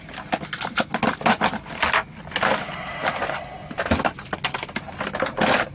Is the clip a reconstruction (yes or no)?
no